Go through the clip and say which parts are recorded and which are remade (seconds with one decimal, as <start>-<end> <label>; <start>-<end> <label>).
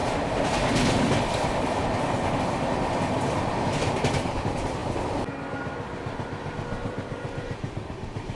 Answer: 0.0-3.2 recorded; 3.2-8.3 remade